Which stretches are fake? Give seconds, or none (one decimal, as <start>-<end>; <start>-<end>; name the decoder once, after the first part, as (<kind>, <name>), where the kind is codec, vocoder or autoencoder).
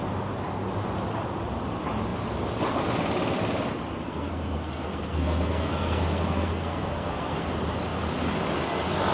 4.0-7.5 (codec, SNAC)